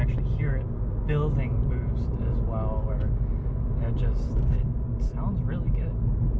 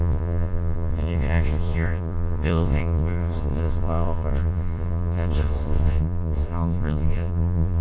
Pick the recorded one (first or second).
first